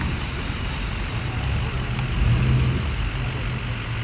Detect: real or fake real